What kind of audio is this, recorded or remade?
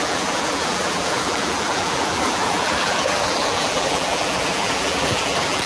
remade